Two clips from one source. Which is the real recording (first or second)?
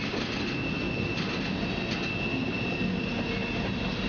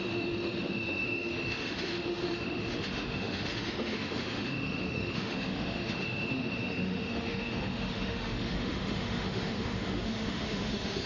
first